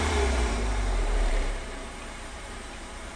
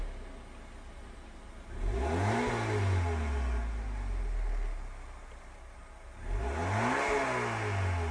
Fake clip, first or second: first